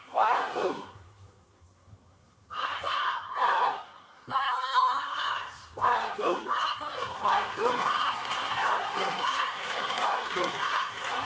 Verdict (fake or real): fake